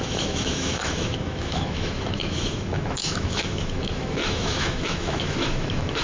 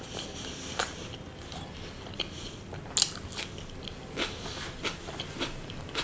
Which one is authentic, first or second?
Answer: second